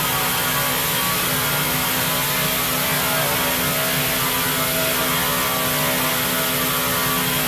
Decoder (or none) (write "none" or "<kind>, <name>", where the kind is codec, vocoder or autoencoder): none